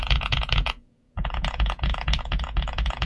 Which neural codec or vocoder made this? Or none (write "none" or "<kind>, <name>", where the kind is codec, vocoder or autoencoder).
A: vocoder, Vocos